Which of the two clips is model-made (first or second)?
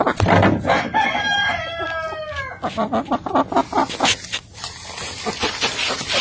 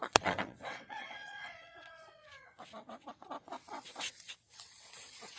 second